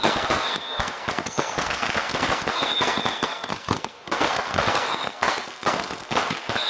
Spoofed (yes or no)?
yes